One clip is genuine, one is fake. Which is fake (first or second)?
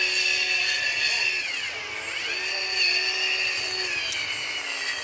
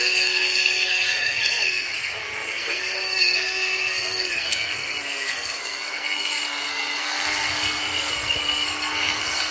second